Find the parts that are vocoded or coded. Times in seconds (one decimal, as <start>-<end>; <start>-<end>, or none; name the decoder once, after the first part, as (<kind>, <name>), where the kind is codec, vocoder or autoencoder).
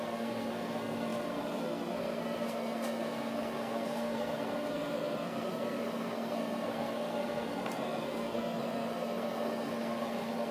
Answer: 0.0-10.5 (codec, SNAC)